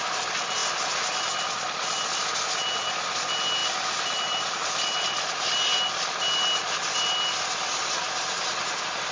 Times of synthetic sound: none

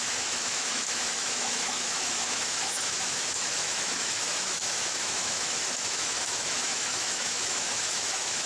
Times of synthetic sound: 0.0-8.5

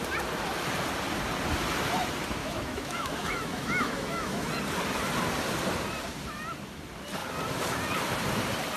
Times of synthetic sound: 2.4-4.5